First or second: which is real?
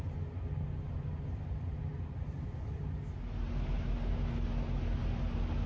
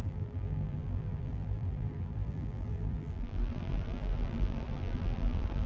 first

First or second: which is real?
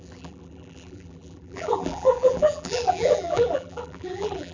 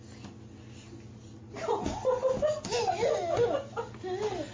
second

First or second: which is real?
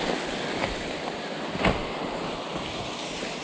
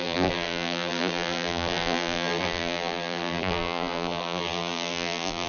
first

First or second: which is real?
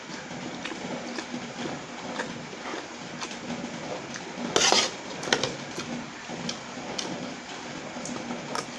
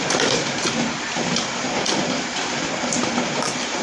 first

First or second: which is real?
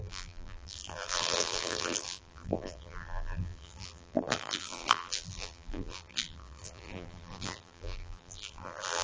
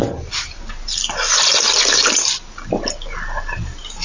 second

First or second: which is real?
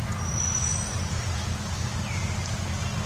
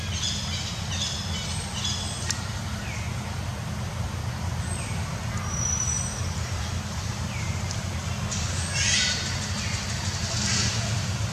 first